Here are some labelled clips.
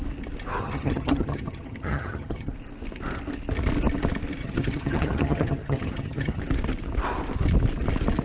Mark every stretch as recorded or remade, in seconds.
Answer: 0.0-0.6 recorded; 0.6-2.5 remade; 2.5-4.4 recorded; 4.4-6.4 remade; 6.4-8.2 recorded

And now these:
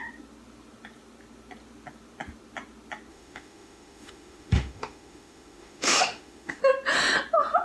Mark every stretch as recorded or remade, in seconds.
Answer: 0.0-3.1 recorded; 3.1-6.6 remade; 6.6-7.6 recorded

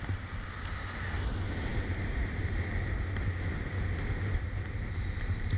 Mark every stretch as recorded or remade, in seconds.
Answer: 0.0-5.6 recorded

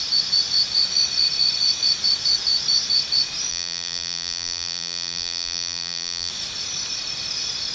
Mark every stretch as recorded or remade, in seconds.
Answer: 0.0-3.5 recorded; 3.5-6.3 remade; 6.3-7.7 recorded

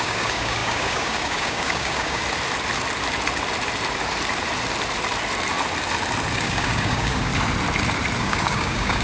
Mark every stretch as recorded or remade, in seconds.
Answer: 0.0-2.2 remade; 2.2-6.4 recorded; 6.4-7.3 remade; 7.3-8.2 recorded; 8.2-9.0 remade

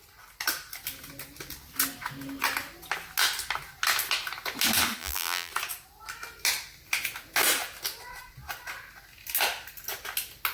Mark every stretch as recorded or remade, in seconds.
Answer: 0.0-5.0 recorded; 5.0-5.5 remade; 5.5-10.5 recorded

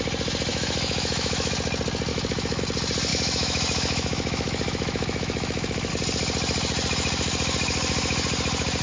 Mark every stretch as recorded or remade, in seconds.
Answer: 0.0-0.5 recorded; 0.5-1.5 remade; 1.5-2.1 recorded; 2.1-2.6 remade; 2.6-3.1 recorded; 3.1-5.9 remade; 5.9-8.8 recorded

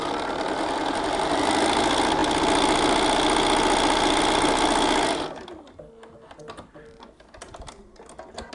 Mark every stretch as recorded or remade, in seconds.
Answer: 0.0-8.5 recorded